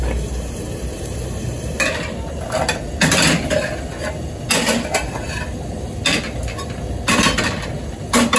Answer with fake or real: real